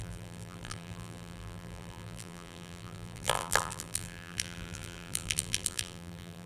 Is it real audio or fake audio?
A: fake